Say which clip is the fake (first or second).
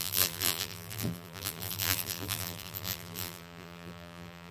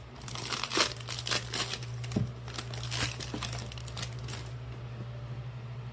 first